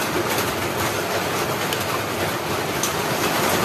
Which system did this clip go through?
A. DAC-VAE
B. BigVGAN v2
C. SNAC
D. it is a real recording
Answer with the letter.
B